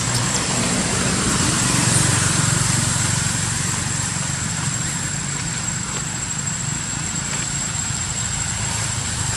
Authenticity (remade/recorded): remade